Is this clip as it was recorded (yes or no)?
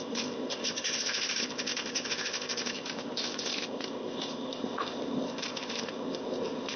no